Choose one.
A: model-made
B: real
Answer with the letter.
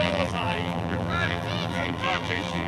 A